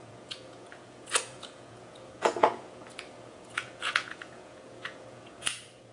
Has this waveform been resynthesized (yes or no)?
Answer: yes